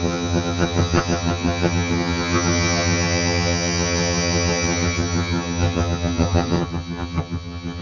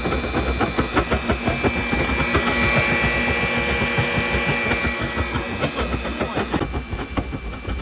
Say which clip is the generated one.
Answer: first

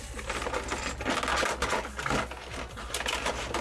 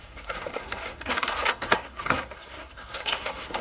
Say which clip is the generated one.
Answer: second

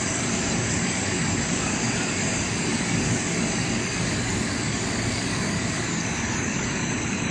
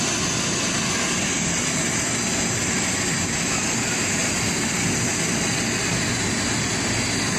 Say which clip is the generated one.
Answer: first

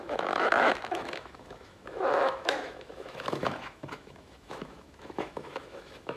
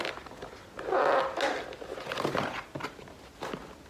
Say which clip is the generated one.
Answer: first